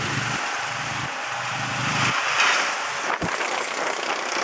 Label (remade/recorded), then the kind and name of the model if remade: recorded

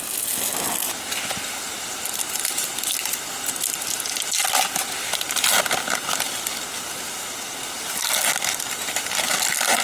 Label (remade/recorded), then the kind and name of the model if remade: recorded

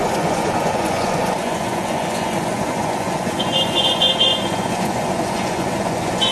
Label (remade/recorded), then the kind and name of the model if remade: remade, vocoder, Vocos